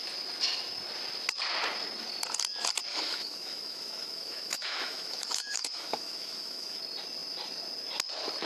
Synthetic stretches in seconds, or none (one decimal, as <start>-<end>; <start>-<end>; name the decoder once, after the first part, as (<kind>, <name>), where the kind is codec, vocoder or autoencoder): 2.9-6.8 (autoencoder, DAC-VAE)